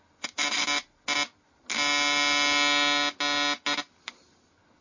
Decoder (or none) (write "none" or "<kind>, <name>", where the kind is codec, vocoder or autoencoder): none